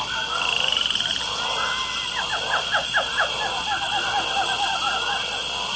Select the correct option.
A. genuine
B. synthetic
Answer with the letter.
A